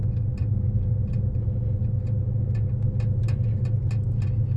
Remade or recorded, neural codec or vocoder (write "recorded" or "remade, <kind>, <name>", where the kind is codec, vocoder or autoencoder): recorded